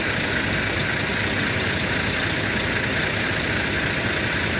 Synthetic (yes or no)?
no